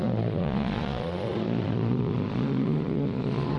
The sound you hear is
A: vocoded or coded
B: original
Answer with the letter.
A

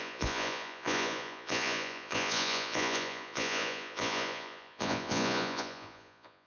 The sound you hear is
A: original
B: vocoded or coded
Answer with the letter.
B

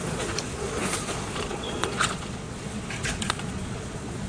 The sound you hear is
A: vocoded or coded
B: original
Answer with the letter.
A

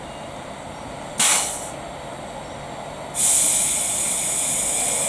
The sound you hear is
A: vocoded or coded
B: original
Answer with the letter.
B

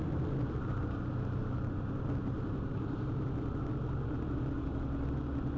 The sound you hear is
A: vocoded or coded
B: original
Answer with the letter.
B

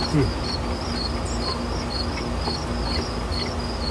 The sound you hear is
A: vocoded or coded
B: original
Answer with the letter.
B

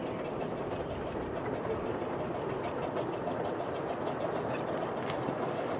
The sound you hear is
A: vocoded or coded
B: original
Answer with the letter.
B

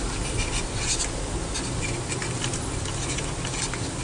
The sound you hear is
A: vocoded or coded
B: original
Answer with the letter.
B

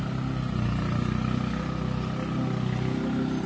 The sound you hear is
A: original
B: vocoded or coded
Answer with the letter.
A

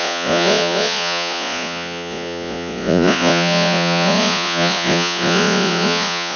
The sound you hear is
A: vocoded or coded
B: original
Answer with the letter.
A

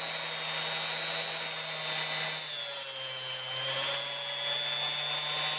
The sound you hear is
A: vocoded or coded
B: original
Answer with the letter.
B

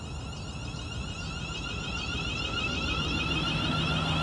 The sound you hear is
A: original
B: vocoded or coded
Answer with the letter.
A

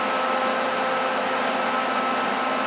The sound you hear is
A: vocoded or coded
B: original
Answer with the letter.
B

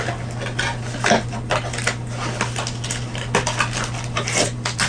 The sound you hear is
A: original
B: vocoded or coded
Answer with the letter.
A